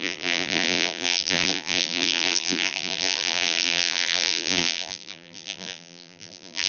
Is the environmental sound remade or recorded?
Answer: remade